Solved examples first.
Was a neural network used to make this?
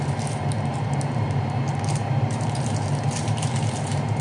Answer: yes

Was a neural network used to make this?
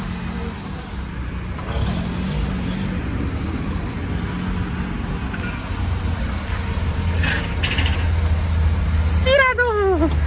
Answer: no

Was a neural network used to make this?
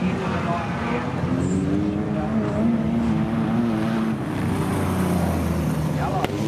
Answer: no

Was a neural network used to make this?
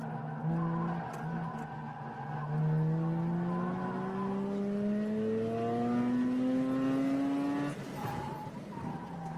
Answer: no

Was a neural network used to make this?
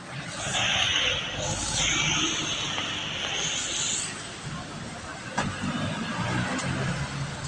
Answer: no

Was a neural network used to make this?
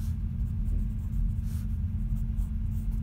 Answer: no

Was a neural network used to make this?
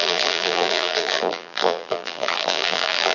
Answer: yes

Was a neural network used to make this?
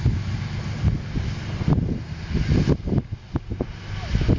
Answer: no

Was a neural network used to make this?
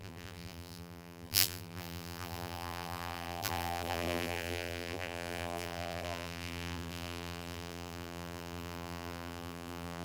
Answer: yes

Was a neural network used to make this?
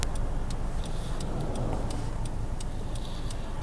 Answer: no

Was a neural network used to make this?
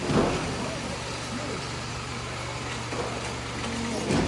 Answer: no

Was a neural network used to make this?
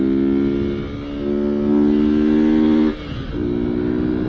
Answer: no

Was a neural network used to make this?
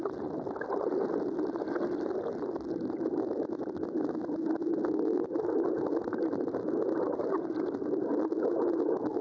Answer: no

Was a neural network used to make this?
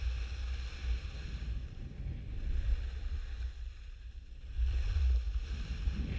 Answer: no